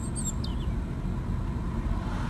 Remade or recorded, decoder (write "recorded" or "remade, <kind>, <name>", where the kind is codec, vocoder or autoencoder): recorded